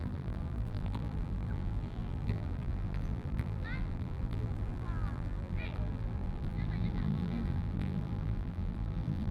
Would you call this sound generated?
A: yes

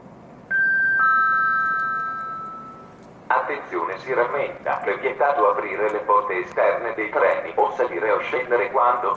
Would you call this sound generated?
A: no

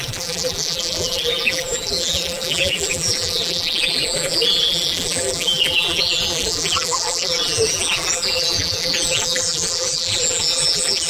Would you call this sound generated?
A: yes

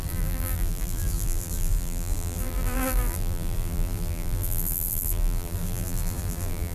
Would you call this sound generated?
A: yes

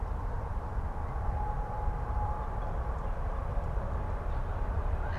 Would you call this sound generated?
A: yes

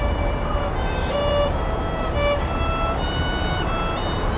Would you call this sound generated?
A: yes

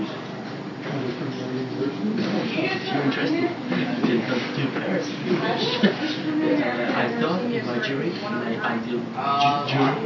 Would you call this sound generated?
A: no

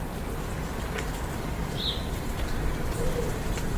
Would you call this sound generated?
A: yes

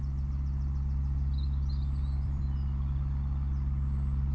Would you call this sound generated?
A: yes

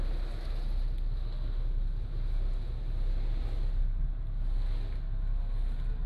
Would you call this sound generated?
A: no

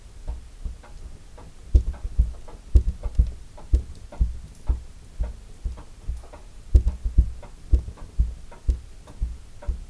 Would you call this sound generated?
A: no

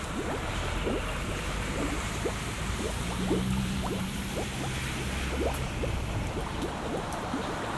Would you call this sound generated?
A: yes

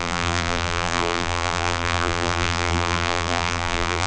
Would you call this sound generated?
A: yes